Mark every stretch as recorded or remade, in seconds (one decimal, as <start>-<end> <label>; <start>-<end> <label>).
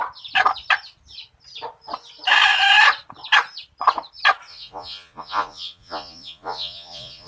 0.0-4.5 recorded; 4.5-7.3 remade